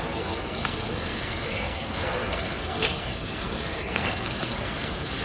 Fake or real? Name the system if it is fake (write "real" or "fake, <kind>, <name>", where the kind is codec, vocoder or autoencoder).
fake, codec, SNAC